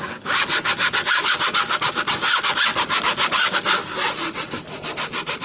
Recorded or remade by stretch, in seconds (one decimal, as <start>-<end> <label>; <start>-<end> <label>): 0.0-5.4 recorded